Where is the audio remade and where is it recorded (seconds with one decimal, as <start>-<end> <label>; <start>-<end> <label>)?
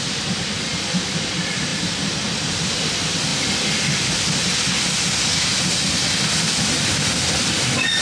0.0-8.0 recorded